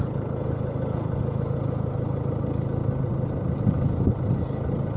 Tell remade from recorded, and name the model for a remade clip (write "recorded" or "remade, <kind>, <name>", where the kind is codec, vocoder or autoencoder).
recorded